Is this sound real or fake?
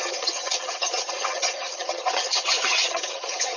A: fake